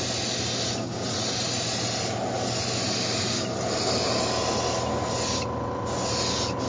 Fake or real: real